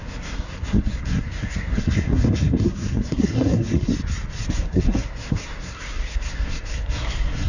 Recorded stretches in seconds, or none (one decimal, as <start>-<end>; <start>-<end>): 3.9-4.5